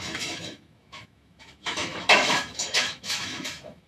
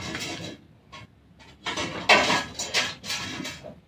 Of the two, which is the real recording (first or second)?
second